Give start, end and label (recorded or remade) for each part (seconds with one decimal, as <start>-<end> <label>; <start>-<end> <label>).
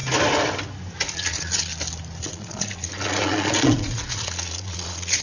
0.0-1.1 recorded; 1.1-1.7 remade; 1.7-2.2 recorded; 2.2-5.2 remade